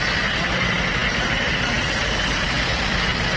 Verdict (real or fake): real